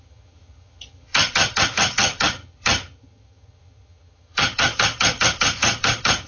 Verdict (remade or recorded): remade